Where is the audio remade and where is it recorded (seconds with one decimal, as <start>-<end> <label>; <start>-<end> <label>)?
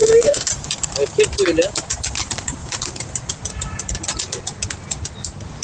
0.0-0.5 remade; 0.5-5.6 recorded